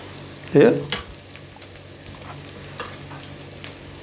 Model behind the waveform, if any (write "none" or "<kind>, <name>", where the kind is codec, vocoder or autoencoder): none